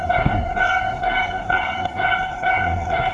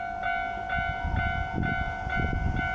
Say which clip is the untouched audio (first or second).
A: second